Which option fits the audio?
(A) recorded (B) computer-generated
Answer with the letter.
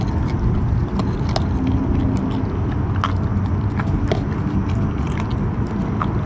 A